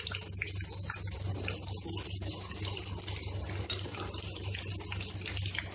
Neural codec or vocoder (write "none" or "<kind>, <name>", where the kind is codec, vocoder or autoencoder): none